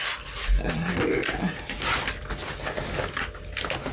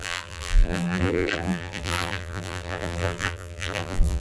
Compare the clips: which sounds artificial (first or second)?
second